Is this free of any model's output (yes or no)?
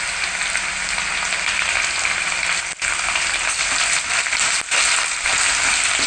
yes